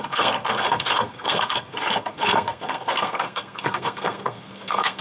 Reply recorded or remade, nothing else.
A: remade